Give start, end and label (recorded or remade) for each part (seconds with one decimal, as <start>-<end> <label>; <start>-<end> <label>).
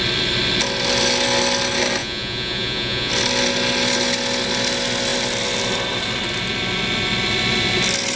0.0-2.0 recorded; 2.0-3.1 remade; 3.1-8.2 recorded